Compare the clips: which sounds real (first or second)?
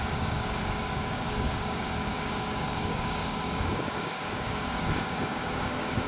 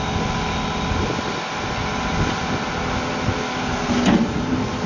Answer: second